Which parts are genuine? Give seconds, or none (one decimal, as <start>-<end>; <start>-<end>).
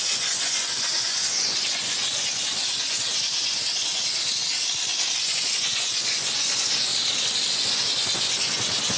4.4-5.2; 6.9-7.5